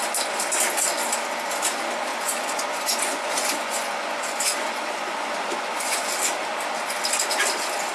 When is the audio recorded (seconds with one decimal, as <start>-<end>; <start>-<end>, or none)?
0.0-2.1; 6.1-7.9